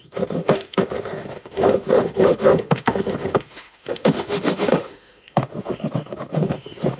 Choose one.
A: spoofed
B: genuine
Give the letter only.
A